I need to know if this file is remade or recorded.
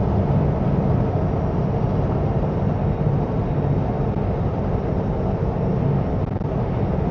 recorded